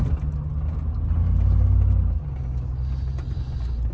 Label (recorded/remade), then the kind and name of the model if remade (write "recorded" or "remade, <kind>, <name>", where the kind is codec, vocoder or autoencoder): recorded